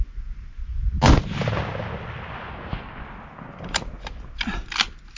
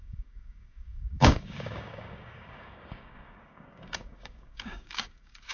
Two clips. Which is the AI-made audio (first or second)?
second